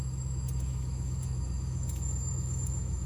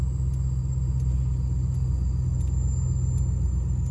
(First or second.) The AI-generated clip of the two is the first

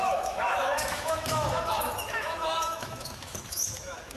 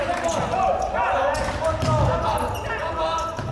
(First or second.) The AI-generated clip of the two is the first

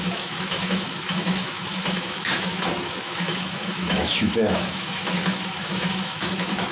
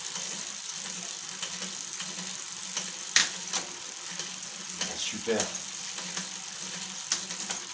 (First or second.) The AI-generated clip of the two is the first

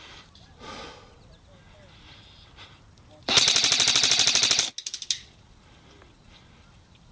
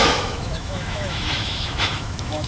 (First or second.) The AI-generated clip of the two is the second